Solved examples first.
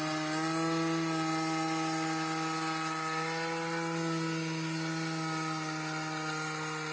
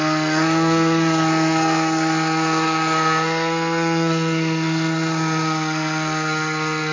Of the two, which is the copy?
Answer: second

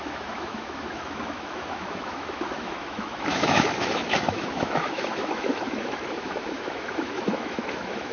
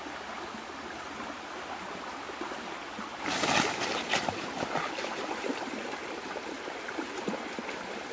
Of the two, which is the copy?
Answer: first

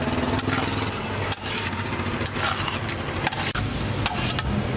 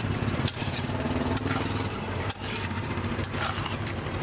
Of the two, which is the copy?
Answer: second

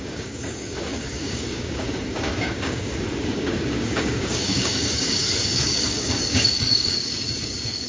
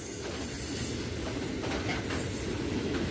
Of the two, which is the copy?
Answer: first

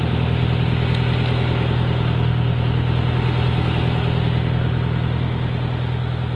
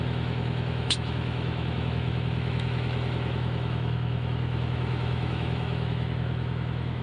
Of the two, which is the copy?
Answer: second